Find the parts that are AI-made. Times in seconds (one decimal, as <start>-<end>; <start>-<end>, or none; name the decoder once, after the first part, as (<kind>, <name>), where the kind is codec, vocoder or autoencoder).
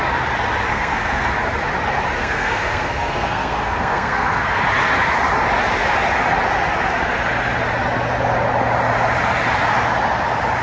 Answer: 0.7-1.3 (codec, SNAC); 2.2-4.6